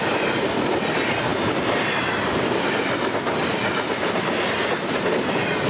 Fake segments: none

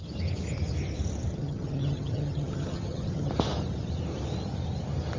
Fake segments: 1.3-3.3 (vocoder, HiFi-GAN)

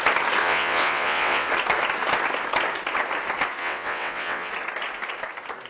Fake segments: 0.4-1.5 (vocoder, WaveNeXt); 3.6-4.5